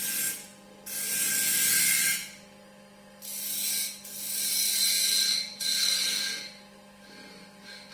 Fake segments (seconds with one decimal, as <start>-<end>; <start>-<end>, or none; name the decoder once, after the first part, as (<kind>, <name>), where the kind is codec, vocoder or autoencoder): 4.7-6.2 (vocoder, BigVGAN v2)